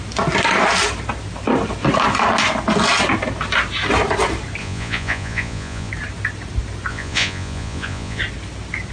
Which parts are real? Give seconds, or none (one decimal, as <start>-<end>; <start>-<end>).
0.0-4.6; 5.9-6.9; 8.2-8.9